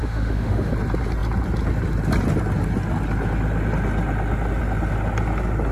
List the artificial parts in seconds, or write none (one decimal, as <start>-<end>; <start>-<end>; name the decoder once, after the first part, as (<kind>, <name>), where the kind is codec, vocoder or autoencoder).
0.0-0.7 (autoencoder, DAC-VAE)